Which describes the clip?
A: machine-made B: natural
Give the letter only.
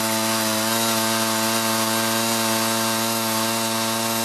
B